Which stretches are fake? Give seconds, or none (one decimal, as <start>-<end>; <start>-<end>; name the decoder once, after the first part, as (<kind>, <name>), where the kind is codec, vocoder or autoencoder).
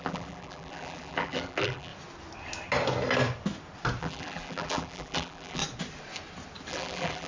0.0-1.9 (vocoder, BigVGAN v2); 4.0-5.6; 6.7-7.3